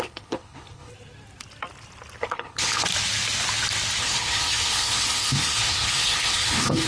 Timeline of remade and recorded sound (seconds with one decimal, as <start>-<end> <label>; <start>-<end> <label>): 0.0-0.9 remade; 0.9-2.2 recorded; 2.2-2.9 remade; 2.9-4.0 recorded; 4.0-6.9 remade